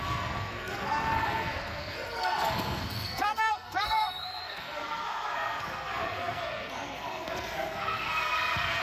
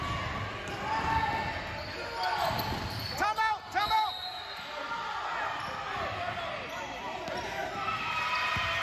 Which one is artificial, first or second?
first